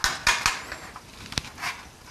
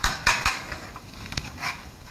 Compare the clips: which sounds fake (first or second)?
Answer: second